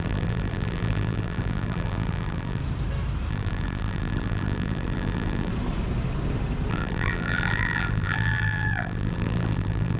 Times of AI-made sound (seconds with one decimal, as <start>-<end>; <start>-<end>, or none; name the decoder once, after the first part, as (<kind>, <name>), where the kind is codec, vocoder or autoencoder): 0.0-2.6 (vocoder, BigVGAN v2); 3.3-5.5; 6.7-10.0